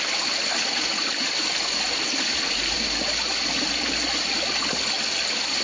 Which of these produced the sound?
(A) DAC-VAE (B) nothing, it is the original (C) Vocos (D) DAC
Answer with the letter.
B